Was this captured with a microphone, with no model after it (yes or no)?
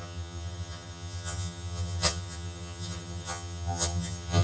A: no